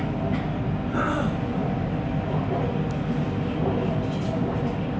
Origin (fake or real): real